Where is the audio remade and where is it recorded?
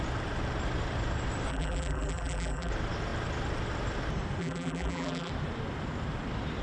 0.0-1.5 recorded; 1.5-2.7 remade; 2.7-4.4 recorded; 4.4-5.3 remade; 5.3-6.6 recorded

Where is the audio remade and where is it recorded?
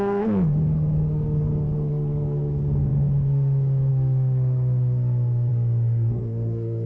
0.0-6.9 remade